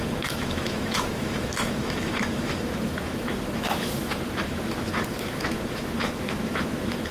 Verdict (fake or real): fake